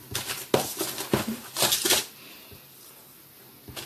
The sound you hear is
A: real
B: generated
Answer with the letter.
A